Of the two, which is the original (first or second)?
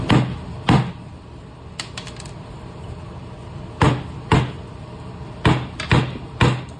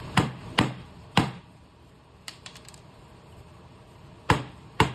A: first